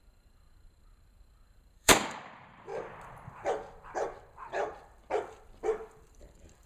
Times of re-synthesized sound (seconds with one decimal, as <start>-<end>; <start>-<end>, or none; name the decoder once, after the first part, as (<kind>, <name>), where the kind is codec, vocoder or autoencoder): 0.0-2.7 (vocoder, BigVGAN v2); 6.1-6.7